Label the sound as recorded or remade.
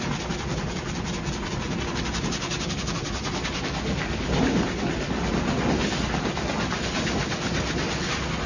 recorded